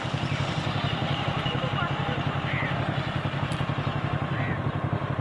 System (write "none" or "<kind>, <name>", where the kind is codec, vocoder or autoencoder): none